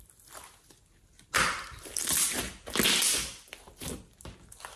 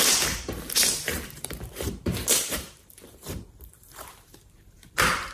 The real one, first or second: first